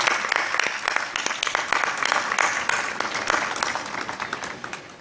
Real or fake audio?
real